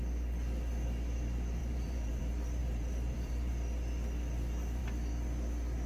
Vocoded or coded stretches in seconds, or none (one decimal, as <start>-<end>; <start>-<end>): 1.6-2.2; 2.6-3.5